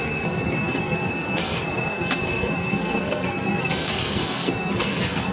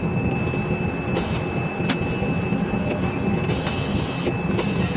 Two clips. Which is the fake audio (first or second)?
first